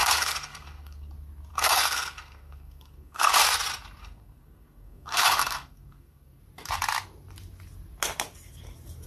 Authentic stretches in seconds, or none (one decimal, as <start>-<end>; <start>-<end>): 1.1-1.5; 3.3-4.0; 6.4-9.1